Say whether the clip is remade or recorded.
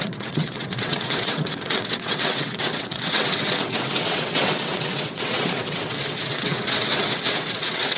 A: remade